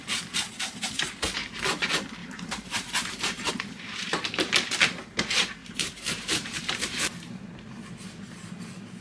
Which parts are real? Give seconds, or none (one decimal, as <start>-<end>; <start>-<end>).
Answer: 0.0-2.2; 3.5-5.6; 7.5-9.0